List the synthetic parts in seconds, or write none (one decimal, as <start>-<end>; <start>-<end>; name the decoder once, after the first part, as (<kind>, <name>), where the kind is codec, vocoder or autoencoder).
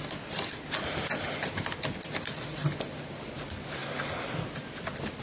none